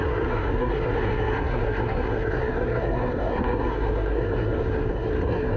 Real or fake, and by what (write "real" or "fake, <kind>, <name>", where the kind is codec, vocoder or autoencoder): fake, codec, SNAC